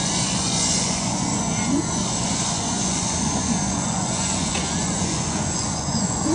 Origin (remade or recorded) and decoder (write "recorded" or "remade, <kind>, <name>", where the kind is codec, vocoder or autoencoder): remade, vocoder, Vocos